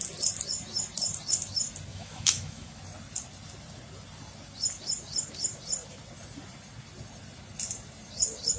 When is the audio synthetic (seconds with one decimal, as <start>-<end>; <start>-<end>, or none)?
1.9-2.8